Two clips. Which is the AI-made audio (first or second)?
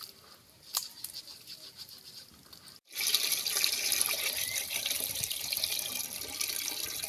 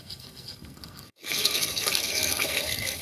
second